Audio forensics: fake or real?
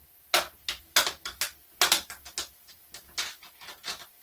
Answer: real